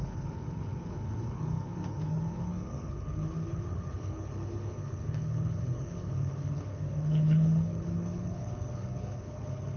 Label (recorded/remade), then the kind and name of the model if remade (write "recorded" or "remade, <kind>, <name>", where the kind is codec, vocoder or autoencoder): remade, codec, HILCodec